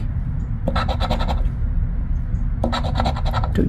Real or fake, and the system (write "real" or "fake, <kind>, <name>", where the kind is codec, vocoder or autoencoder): real